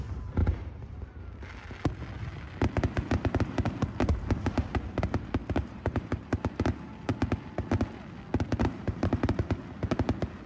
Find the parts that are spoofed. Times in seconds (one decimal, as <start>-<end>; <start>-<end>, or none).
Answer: 0.4-1.2; 5.4-6.9; 8.5-9.4